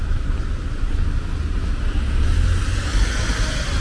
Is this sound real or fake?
real